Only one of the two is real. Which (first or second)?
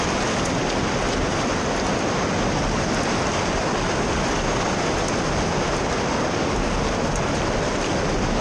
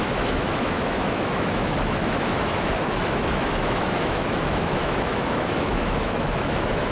first